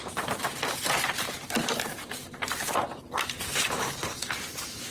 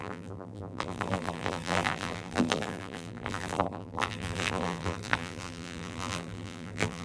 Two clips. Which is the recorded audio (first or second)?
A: first